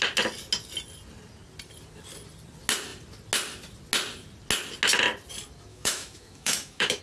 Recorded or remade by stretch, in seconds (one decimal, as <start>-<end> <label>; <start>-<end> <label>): 0.0-5.7 recorded; 5.7-7.0 remade